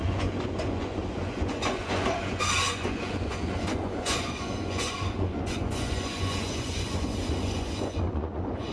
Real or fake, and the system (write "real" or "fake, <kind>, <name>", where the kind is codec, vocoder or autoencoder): fake, vocoder, Vocos